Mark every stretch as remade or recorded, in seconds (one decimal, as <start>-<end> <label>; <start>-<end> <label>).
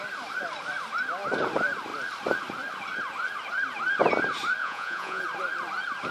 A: 0.0-4.6 recorded; 4.6-5.2 remade; 5.2-6.1 recorded